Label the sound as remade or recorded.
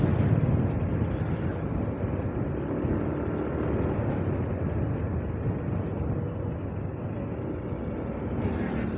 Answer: recorded